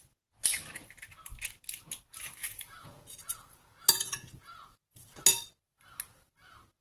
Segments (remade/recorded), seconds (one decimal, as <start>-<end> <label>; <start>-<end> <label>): 0.0-2.4 recorded; 2.4-5.2 remade; 5.2-6.8 recorded